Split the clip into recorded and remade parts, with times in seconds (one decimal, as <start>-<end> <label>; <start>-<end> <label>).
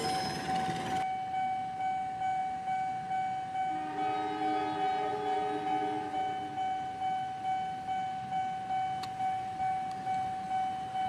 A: 0.0-11.1 recorded